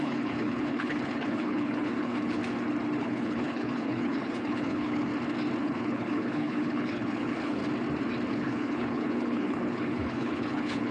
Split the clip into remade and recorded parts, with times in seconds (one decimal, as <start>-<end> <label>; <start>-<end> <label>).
0.0-2.4 remade; 2.4-3.0 recorded; 3.0-5.1 remade; 5.1-5.6 recorded; 5.6-7.6 remade; 7.6-8.3 recorded; 8.3-10.9 remade